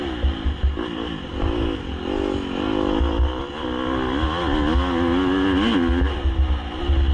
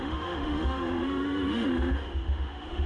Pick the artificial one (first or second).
second